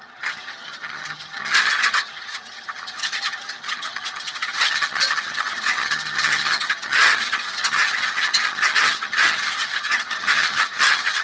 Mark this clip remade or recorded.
remade